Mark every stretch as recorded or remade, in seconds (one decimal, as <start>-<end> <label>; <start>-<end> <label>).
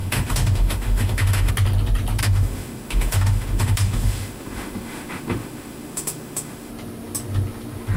0.0-1.5 remade; 1.5-2.2 recorded; 2.2-6.7 remade; 6.7-8.0 recorded